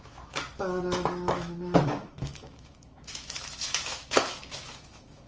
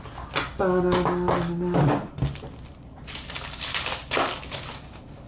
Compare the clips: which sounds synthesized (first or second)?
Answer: first